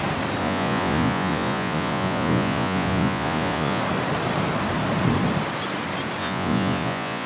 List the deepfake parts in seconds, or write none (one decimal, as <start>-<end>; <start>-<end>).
0.4-3.8; 6.2-7.3